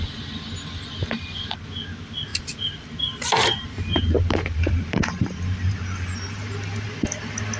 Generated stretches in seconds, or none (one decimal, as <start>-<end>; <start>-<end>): 2.3-6.9